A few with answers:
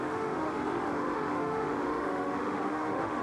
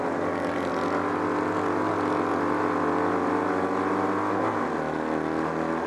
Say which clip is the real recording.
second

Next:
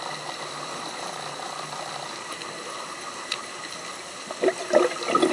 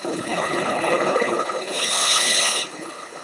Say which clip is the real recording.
first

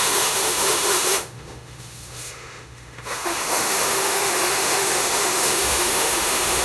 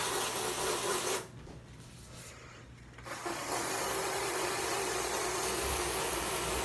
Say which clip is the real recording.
second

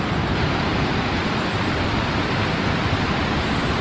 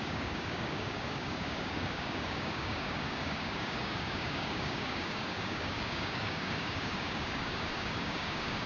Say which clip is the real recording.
first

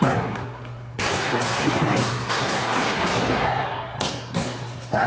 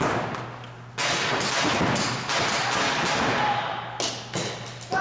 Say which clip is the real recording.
second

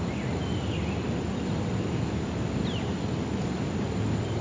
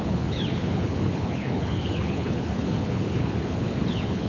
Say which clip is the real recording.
first